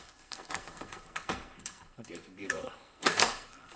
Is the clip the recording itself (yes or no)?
no